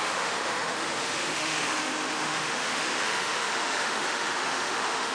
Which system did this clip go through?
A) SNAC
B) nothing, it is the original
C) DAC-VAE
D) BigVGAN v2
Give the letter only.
C